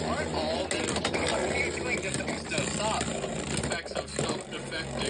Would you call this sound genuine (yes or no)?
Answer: yes